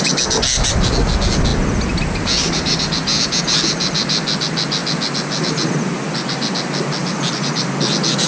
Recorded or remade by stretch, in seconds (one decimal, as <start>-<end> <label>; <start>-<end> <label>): 0.0-8.3 recorded